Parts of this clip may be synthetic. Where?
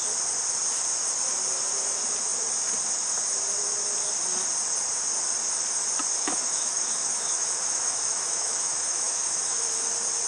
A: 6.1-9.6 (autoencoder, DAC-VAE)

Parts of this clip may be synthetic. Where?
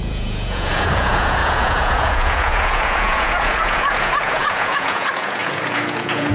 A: 0.0-6.3 (vocoder, Vocos)